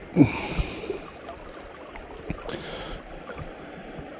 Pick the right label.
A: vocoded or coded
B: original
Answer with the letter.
B